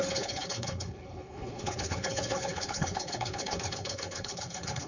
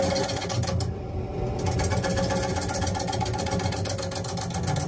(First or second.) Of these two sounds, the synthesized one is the first